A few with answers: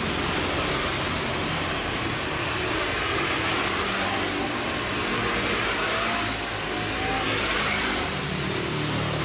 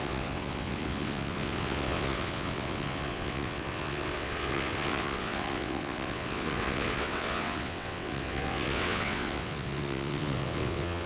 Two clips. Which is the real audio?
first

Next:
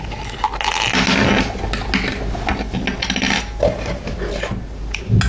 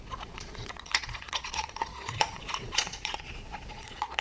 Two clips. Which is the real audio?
first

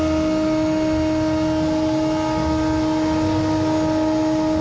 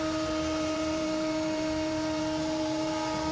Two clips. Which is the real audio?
first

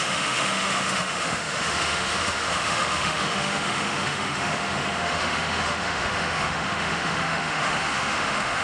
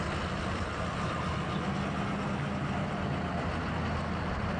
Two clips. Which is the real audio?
second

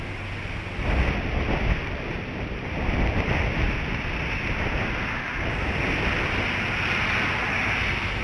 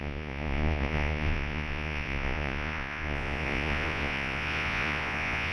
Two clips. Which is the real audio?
first